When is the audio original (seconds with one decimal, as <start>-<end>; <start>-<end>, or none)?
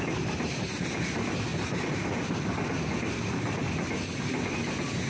0.0-5.1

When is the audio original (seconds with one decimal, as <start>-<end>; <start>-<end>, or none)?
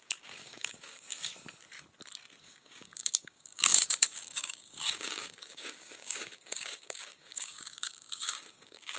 1.3-2.4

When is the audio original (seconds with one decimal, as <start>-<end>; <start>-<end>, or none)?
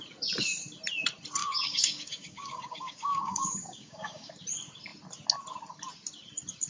0.0-1.4; 4.3-6.7